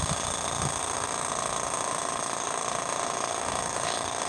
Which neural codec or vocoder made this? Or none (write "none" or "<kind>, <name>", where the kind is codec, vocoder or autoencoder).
autoencoder, DAC-VAE